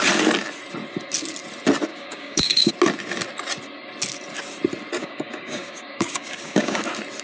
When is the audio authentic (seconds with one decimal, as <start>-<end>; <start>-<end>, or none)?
0.0-1.9; 2.7-5.0; 6.8-7.2